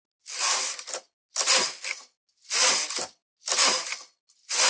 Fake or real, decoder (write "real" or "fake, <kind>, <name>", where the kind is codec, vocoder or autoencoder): real